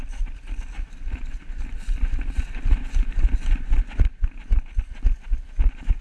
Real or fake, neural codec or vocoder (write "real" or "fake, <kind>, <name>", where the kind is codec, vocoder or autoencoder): real